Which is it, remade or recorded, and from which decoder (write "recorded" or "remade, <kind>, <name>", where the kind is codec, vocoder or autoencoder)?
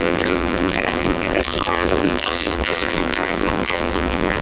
remade, vocoder, BigVGAN v2